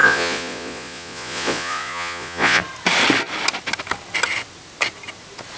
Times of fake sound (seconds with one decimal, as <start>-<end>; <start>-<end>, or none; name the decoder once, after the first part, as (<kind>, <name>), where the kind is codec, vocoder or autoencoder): 0.0-2.6 (vocoder, Vocos)